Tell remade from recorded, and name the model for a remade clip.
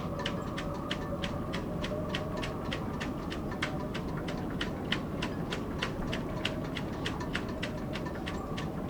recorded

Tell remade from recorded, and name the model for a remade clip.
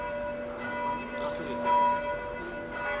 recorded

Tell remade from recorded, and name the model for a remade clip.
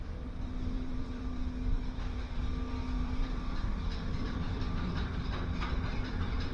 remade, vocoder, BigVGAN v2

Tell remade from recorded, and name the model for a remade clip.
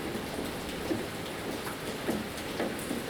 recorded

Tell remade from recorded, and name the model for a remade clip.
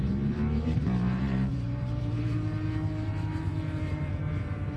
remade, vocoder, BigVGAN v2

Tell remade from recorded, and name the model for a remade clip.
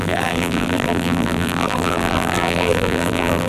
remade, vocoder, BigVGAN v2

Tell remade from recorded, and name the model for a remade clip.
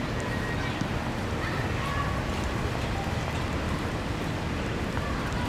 recorded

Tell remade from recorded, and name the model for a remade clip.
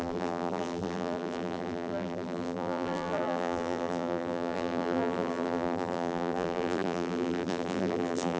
remade, vocoder, BigVGAN v2